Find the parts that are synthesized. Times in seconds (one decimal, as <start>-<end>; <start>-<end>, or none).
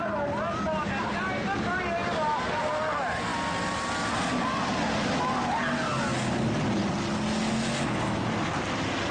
none